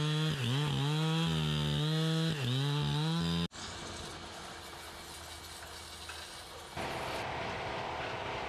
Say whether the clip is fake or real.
real